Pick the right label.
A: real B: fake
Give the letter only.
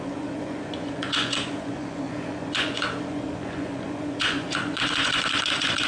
B